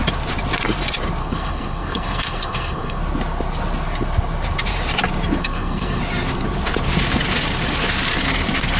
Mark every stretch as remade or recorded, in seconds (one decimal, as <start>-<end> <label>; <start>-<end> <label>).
0.0-1.2 recorded; 1.2-3.0 remade; 3.0-5.4 recorded; 5.4-6.0 remade; 6.0-8.8 recorded